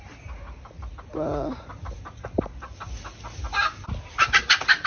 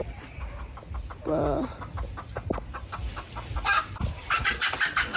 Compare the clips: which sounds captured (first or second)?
first